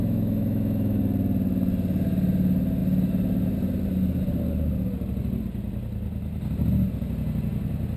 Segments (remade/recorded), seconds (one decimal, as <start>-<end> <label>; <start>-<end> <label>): 0.0-1.0 remade; 1.0-8.0 recorded

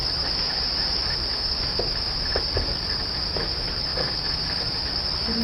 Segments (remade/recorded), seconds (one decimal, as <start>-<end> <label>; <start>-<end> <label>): 0.0-2.5 remade; 2.5-3.2 recorded; 3.2-5.4 remade